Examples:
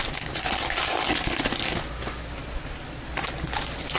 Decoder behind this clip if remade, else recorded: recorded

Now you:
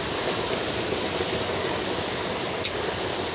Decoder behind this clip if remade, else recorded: recorded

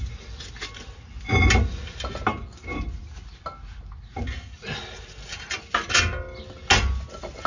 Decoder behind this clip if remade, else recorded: recorded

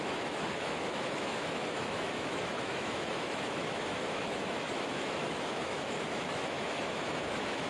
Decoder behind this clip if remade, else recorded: remade, autoencoder, DAC-VAE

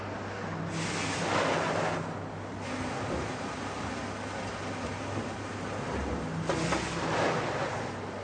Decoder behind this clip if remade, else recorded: recorded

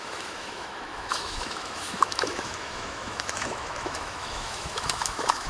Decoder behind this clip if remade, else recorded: remade, autoencoder, DAC-VAE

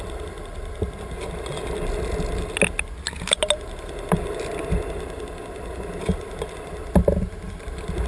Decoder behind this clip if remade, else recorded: recorded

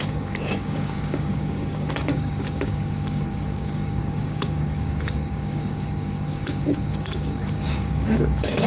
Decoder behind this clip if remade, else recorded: remade, codec, DAC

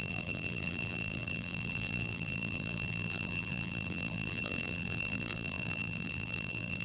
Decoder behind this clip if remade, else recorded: remade, vocoder, BigVGAN v2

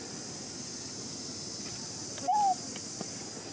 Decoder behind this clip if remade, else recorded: recorded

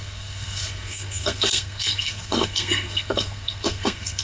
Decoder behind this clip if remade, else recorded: remade, codec, SNAC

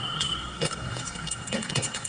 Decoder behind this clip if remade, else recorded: remade, codec, SNAC